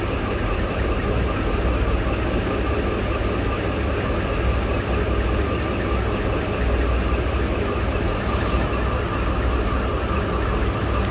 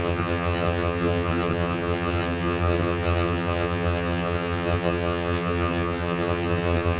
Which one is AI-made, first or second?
second